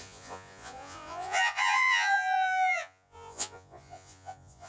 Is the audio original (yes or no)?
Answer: no